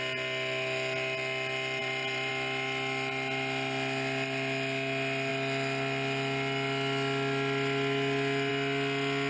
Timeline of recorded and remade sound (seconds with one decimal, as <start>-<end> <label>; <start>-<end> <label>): 0.0-1.8 recorded; 1.8-2.3 remade; 2.3-9.3 recorded